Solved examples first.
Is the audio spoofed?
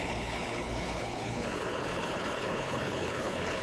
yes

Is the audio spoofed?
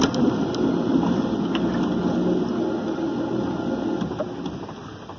no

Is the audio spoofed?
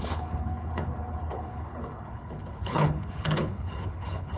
yes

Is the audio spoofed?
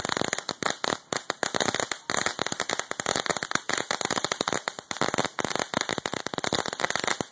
no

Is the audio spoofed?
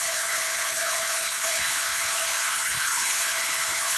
yes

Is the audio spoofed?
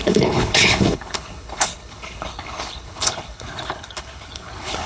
yes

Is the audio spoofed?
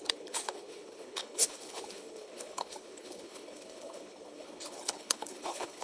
yes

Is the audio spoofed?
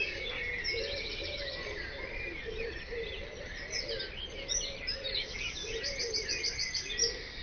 no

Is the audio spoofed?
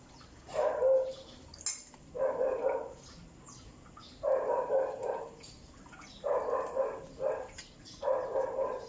no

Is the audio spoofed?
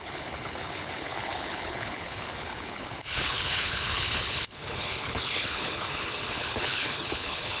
yes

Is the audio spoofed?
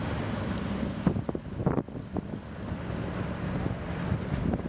no